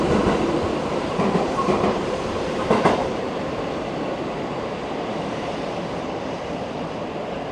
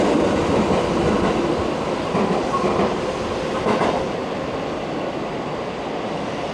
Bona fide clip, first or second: second